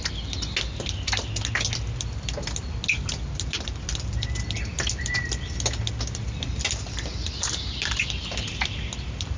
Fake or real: real